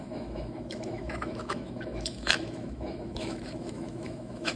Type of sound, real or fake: fake